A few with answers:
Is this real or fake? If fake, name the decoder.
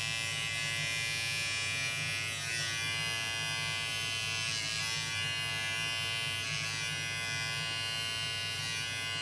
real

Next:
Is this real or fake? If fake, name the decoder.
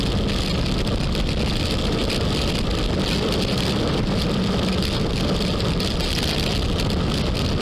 real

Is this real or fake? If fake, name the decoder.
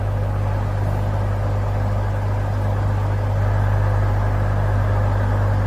real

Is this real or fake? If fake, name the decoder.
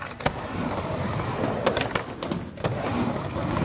real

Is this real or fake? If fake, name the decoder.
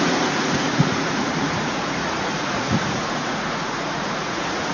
fake, vocoder, Vocos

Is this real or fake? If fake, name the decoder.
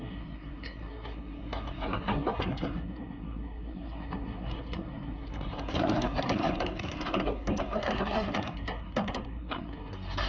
fake, codec, SNAC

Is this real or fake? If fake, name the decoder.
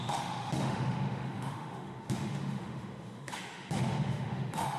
fake, autoencoder, DAC-VAE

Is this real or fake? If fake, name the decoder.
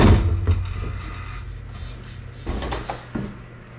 real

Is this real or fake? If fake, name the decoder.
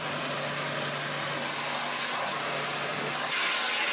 real